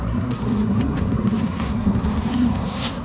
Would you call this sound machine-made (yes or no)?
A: yes